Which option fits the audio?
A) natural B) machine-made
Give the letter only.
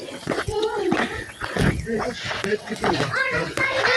B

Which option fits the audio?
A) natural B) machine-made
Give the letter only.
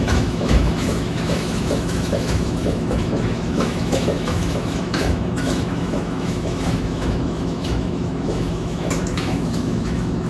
B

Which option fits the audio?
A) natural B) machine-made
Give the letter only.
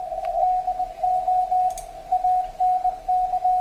A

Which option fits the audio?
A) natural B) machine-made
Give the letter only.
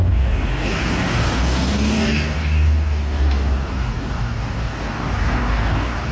B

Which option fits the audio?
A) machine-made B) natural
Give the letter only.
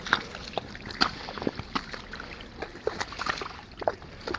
B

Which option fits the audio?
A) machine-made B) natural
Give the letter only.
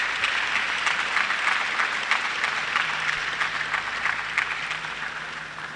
B